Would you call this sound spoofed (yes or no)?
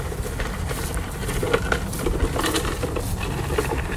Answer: no